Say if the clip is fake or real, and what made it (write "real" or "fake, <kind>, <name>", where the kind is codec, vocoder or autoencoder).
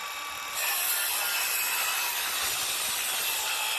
real